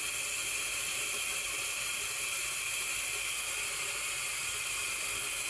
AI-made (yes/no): no